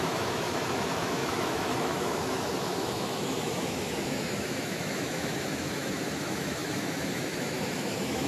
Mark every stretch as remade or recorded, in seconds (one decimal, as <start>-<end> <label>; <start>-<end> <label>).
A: 0.0-8.3 remade